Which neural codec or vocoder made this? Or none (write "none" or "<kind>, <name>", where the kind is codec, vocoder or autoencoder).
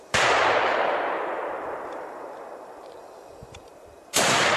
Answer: vocoder, BigVGAN v2